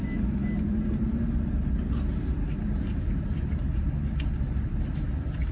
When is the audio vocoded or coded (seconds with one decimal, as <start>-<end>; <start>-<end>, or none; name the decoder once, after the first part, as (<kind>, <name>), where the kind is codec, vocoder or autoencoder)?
none